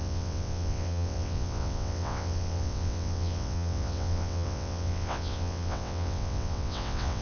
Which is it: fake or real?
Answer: fake